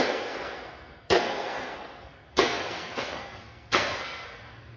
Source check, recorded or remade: remade